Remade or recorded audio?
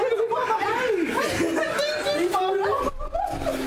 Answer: recorded